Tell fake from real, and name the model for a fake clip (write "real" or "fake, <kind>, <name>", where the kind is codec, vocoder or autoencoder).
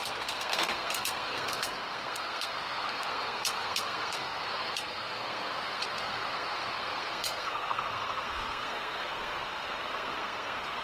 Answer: fake, codec, SNAC